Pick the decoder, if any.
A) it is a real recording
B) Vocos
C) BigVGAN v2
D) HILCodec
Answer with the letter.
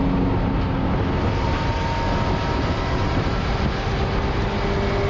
A